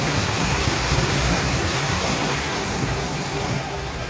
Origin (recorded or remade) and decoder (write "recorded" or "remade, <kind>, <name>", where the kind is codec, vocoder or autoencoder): remade, codec, SNAC